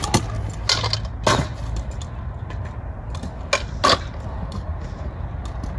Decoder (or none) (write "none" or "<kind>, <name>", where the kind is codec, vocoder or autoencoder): none